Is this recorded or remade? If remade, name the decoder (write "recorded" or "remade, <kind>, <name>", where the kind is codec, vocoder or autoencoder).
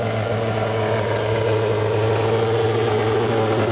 recorded